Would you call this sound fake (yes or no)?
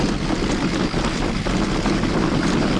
no